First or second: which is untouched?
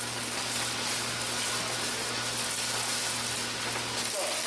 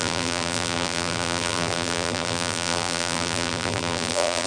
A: first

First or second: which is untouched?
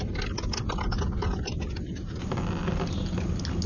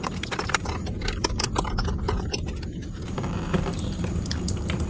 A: first